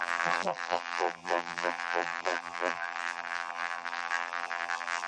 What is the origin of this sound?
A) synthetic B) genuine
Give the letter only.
A